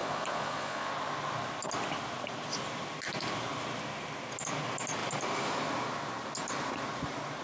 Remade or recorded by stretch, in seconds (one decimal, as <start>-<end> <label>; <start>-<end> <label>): 0.0-0.9 remade; 0.9-7.4 recorded